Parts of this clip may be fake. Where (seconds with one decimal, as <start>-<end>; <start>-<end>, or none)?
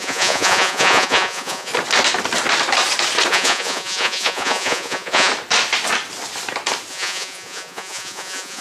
0.0-1.7; 3.3-5.3; 6.9-8.6